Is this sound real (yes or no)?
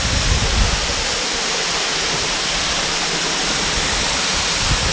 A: yes